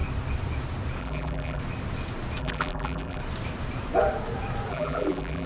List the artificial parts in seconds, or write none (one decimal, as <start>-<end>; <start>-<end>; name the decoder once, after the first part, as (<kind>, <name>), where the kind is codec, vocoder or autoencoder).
1.0-1.6 (vocoder, BigVGAN v2); 2.4-3.2; 4.7-5.5